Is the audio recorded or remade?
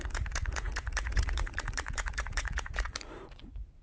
remade